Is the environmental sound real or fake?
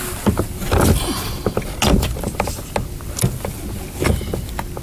real